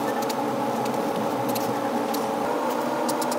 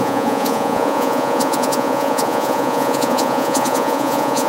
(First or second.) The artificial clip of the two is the second